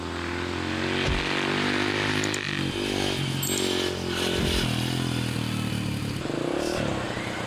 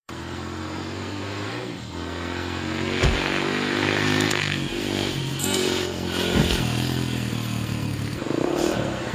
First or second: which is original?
first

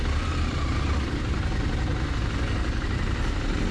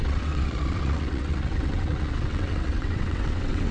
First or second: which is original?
first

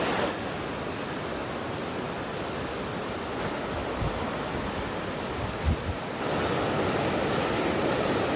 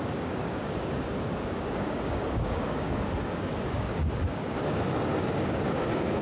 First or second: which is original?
first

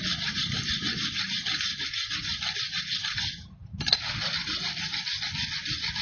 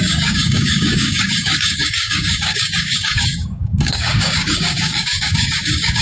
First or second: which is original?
first